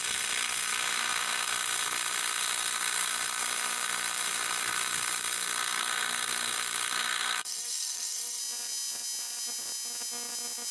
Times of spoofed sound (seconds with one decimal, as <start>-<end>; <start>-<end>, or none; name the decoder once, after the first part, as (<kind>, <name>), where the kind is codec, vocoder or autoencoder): 0.0-8.4 (codec, SNAC)

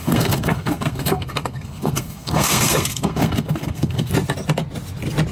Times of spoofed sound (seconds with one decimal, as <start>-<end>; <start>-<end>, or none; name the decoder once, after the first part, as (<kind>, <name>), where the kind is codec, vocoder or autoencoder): 0.0-4.1 (codec, SNAC)

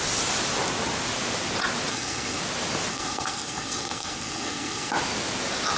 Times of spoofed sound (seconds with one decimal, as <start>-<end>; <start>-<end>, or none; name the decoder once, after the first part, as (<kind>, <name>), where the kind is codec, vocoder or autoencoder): 1.9-2.4 (codec, SNAC); 2.9-4.9

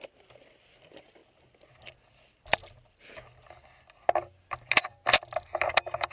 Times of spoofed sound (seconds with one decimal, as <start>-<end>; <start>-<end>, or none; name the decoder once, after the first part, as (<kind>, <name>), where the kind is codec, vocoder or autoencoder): none